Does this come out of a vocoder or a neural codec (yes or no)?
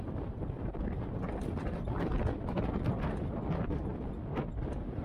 yes